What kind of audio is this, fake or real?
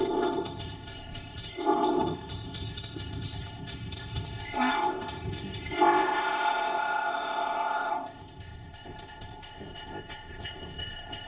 fake